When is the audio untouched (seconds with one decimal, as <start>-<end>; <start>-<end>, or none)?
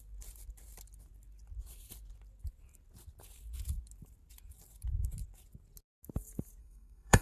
0.0-6.6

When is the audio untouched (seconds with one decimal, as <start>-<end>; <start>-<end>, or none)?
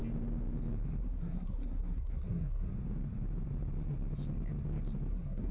0.0-1.0; 2.7-5.1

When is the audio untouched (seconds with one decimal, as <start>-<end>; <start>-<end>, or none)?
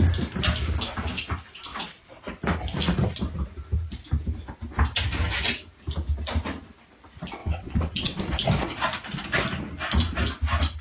0.0-1.7; 2.2-7.4; 8.2-10.8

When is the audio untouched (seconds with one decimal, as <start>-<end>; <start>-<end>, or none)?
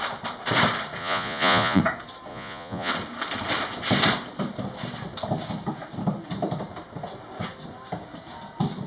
0.0-1.0; 1.8-2.3; 2.9-8.9